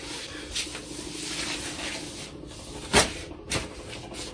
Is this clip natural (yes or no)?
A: yes